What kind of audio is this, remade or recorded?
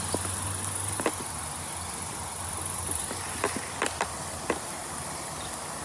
recorded